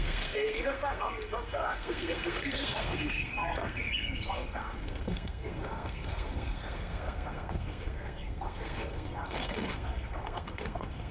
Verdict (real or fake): fake